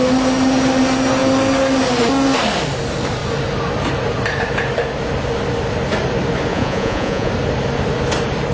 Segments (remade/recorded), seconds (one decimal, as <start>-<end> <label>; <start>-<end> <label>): 0.0-6.5 recorded; 6.5-7.3 remade; 7.3-8.5 recorded

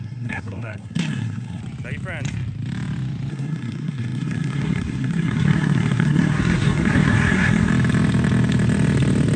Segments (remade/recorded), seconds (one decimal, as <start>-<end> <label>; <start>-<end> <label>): 0.0-1.6 remade; 1.6-3.3 recorded; 3.3-7.7 remade; 7.7-9.4 recorded

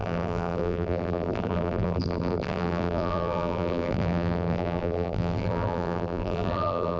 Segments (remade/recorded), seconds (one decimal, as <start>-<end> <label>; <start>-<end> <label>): 0.0-7.0 remade